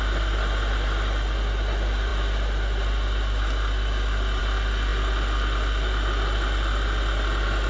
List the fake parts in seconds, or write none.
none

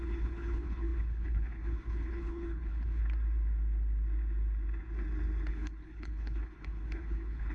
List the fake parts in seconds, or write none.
0.0-3.0 (codec, HILCodec); 5.5-7.5

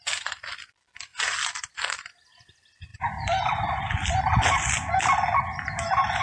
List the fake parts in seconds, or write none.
none

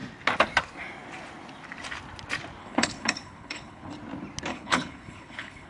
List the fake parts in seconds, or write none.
2.6-3.9 (codec, HILCodec); 4.5-5.7

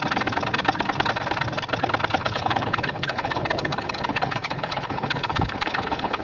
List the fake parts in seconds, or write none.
2.2-6.2 (codec, HILCodec)

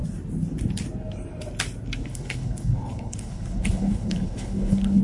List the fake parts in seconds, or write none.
2.0-5.0 (codec, HILCodec)

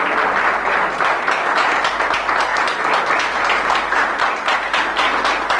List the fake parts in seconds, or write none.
none

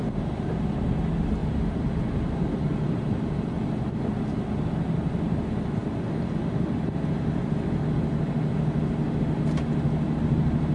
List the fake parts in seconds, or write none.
none